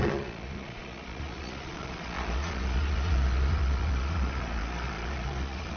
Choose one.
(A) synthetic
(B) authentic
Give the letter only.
A